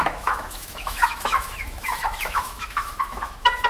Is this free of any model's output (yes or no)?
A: no